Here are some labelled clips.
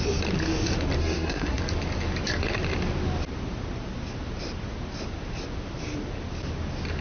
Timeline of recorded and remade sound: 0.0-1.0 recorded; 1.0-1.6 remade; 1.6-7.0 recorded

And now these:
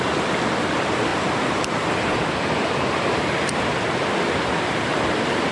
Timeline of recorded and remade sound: 0.0-5.5 recorded

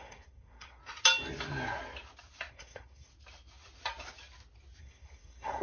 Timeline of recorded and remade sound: 0.0-0.8 remade; 0.8-2.5 recorded; 2.5-3.1 remade; 3.1-4.8 recorded; 4.8-5.6 remade

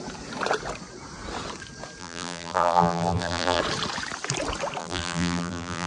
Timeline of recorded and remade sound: 0.0-2.0 recorded; 2.0-3.6 remade; 3.6-4.8 recorded; 4.8-5.9 remade